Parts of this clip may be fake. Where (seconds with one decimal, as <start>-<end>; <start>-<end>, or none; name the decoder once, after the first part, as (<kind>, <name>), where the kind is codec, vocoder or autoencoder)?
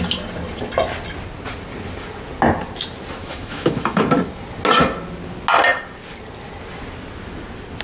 3.2-4.0 (autoencoder, DAC-VAE)